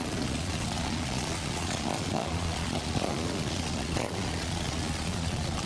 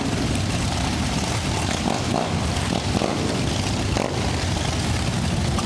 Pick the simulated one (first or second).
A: first